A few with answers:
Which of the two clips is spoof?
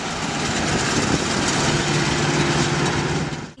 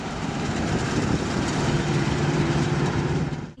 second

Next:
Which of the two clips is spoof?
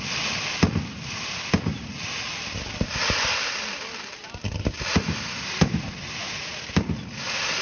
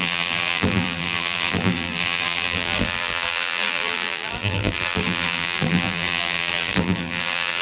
second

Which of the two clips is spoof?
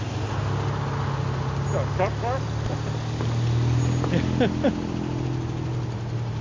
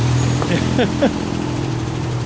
second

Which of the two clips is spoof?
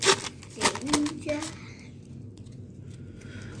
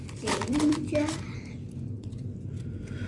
second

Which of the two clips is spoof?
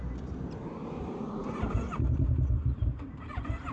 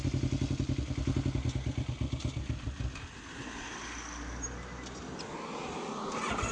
first